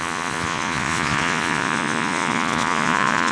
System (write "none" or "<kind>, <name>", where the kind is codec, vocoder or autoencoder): vocoder, Vocos